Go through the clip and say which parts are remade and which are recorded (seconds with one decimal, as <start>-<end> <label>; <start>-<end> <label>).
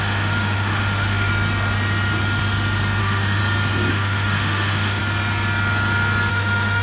0.0-1.3 remade; 1.3-3.0 recorded; 3.0-3.4 remade; 3.4-3.9 recorded; 3.9-5.0 remade; 5.0-6.3 recorded; 6.3-6.8 remade